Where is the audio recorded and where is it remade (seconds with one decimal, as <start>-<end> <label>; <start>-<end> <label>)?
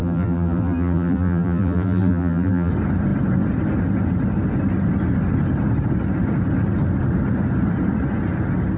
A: 0.0-2.7 remade; 2.7-8.8 recorded